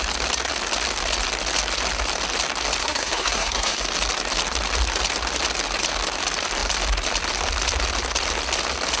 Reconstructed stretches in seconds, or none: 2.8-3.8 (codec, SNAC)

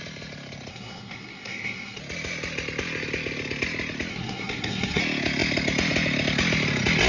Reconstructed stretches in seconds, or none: 0.7-2.0 (codec, SNAC); 4.1-5.0

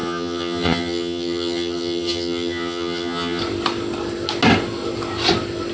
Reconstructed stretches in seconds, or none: 0.0-3.4 (vocoder, HiFi-GAN)

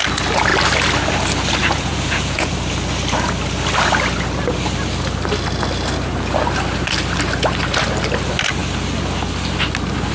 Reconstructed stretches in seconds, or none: 1.6-2.5 (vocoder, Vocos)

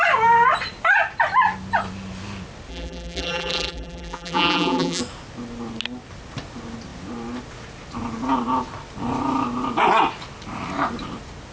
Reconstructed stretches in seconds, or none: 2.7-5.0 (vocoder, BigVGAN v2)

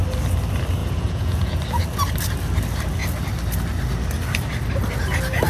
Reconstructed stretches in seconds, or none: 0.8-1.6 (vocoder, Vocos)